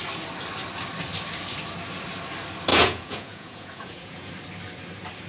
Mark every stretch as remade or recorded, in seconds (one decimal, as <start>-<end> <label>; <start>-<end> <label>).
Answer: 0.0-2.7 recorded; 2.7-4.3 remade; 4.3-5.3 recorded